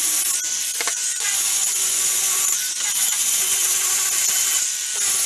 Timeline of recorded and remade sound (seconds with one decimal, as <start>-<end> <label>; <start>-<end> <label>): 0.0-0.9 recorded; 0.9-4.1 remade; 4.1-5.3 recorded

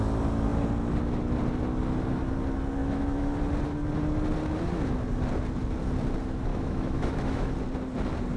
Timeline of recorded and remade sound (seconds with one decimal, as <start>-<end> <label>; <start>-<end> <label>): 0.0-2.8 recorded; 2.8-3.4 remade; 3.4-6.5 recorded; 6.5-7.5 remade; 7.5-8.4 recorded

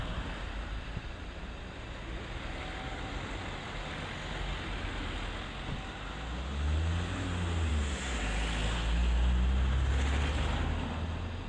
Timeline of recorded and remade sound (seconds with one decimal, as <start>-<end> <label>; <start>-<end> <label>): 0.0-7.7 recorded; 7.7-8.2 remade; 8.2-11.5 recorded